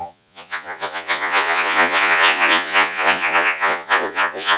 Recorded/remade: remade